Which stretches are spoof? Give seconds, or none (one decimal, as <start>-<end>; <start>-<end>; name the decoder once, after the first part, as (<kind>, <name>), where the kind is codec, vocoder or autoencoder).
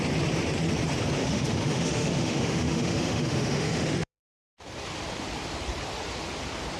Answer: 1.2-4.2 (autoencoder, DAC-VAE)